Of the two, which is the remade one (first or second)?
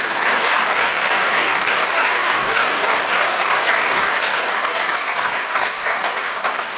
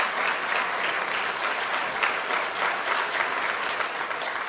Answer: first